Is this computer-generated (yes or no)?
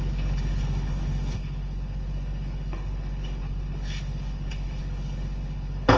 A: yes